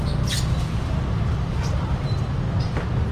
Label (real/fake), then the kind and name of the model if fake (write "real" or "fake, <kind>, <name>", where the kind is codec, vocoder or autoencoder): real